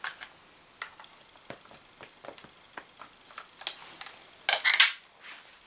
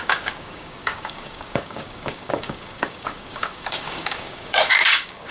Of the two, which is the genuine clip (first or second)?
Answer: first